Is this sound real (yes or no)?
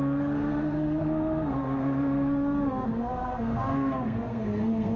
no